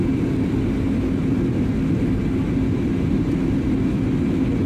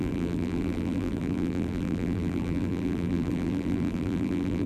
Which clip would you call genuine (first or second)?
first